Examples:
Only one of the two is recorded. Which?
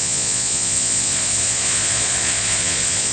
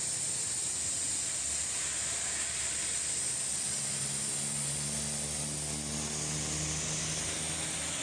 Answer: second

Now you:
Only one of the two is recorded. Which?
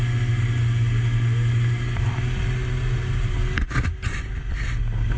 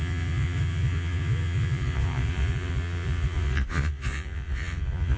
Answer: first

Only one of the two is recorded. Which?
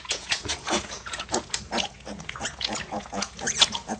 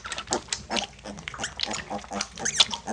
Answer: second